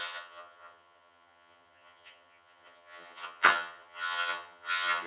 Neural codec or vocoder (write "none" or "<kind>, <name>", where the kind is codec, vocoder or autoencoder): vocoder, HiFi-GAN